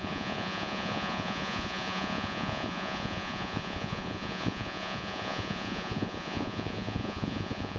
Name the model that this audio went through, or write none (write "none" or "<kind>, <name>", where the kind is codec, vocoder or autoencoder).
vocoder, Vocos